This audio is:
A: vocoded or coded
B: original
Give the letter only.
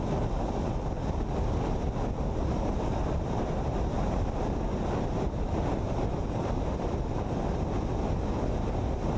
B